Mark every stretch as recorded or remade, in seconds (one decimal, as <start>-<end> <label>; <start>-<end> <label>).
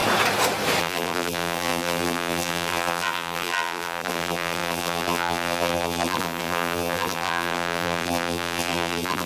0.0-0.8 recorded; 0.8-9.3 remade